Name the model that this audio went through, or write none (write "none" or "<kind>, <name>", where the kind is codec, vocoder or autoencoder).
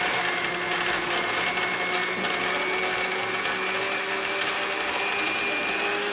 none